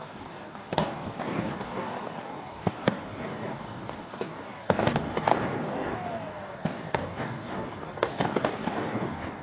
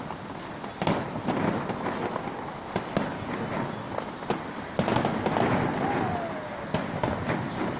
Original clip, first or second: second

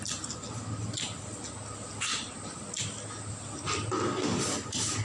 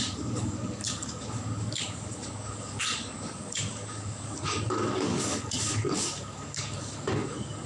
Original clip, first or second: first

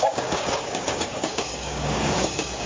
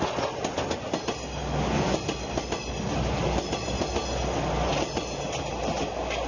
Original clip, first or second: second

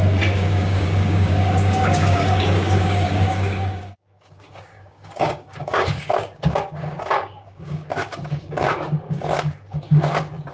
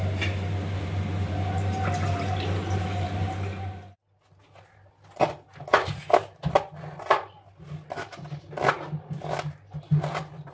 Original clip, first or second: second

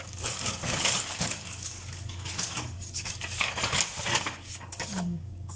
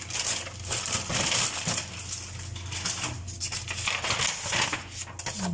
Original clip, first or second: second